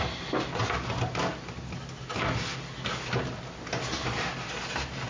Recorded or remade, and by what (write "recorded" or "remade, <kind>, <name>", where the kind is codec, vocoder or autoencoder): recorded